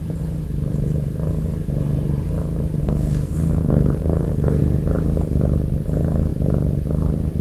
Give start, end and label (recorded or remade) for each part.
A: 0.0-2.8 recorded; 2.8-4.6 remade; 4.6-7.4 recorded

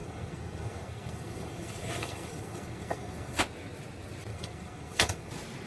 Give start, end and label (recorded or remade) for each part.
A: 0.0-3.4 remade; 3.4-4.3 recorded; 4.3-5.3 remade; 5.3-5.7 recorded

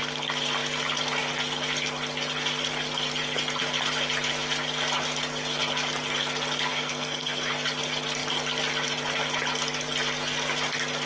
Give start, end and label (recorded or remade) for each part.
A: 0.0-6.7 recorded; 6.7-7.5 remade; 7.5-11.1 recorded

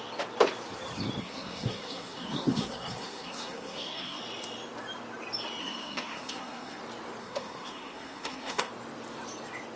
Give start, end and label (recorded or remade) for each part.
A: 0.0-1.2 recorded; 1.2-4.2 remade; 4.2-5.6 recorded; 5.6-6.8 remade; 6.8-7.2 recorded; 7.2-8.7 remade; 8.7-9.8 recorded

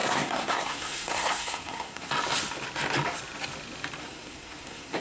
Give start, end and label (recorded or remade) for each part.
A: 0.0-2.1 remade; 2.1-4.0 recorded; 4.0-5.0 remade

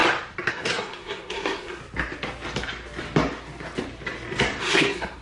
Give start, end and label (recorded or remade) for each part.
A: 0.0-0.5 recorded; 0.5-1.8 remade; 1.8-4.6 recorded; 4.6-5.2 remade

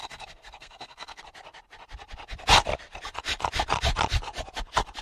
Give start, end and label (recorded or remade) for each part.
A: 0.0-1.2 remade; 1.2-5.0 recorded